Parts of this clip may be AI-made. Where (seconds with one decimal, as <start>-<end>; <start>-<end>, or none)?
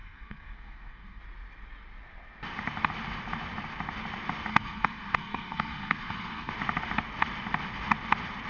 0.0-1.2; 4.5-6.5